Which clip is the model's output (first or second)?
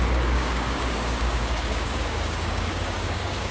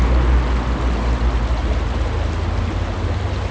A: first